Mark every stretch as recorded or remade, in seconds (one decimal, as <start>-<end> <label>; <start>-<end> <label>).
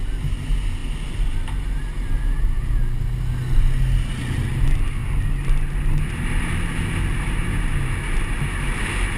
0.0-9.2 recorded